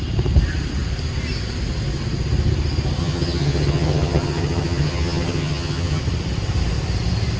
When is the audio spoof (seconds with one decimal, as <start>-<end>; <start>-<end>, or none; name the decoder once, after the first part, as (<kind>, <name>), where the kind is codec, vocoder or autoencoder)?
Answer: 3.0-6.0 (vocoder, HiFi-GAN)